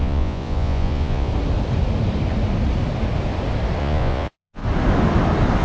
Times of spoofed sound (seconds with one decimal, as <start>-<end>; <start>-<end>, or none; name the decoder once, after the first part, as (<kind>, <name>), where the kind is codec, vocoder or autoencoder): 0.0-1.3 (vocoder, Vocos); 3.8-4.6